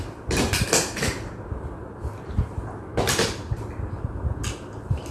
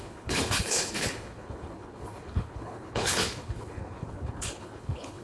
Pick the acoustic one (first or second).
first